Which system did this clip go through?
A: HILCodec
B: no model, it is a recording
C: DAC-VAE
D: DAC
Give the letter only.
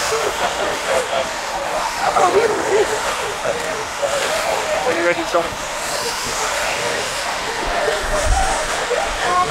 C